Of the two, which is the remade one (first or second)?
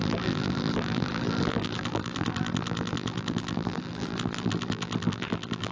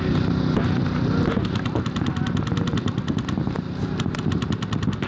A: first